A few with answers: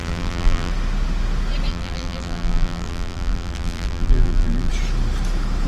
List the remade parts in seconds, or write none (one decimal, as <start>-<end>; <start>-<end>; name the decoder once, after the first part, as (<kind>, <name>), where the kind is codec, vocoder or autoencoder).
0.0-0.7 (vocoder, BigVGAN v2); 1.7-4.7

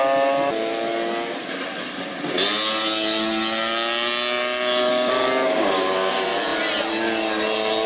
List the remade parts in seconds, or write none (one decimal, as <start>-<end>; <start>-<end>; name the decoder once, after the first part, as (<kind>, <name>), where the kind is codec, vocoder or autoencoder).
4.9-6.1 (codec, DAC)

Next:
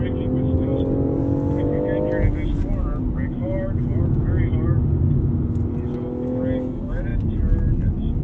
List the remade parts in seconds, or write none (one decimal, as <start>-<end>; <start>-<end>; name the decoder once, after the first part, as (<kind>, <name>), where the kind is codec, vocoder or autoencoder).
none